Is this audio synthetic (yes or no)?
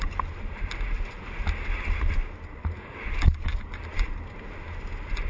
no